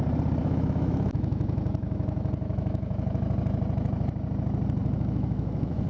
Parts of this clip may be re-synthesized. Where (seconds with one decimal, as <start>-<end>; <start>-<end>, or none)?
0.4-3.2; 4.8-5.9